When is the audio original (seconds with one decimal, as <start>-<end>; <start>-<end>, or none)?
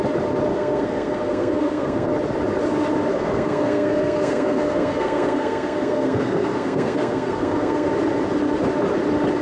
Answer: 0.0-0.5; 2.1-3.1; 7.9-9.4